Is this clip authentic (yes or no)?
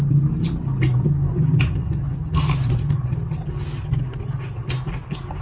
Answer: yes